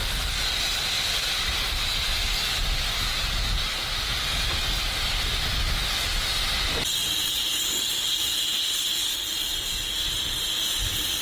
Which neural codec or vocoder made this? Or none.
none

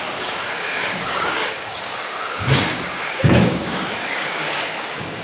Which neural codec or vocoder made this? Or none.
codec, DAC